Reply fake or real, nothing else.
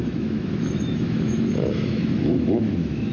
fake